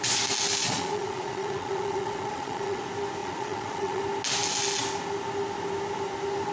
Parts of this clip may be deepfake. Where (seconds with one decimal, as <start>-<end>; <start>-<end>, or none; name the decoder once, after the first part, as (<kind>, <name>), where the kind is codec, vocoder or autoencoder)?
0.6-2.8 (vocoder, Vocos); 3.2-4.0

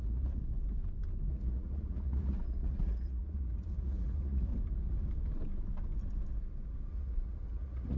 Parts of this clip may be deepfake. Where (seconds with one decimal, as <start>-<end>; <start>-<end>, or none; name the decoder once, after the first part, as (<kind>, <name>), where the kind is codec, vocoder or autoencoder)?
0.0-0.4 (vocoder, Vocos); 1.3-4.5; 6.9-8.0

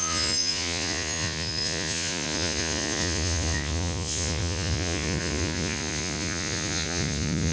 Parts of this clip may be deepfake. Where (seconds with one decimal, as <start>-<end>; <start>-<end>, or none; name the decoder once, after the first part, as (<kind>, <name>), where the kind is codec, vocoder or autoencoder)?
0.0-7.5 (vocoder, Vocos)